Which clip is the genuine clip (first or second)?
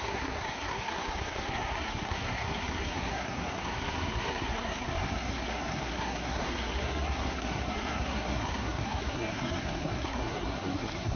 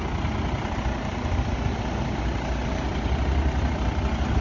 second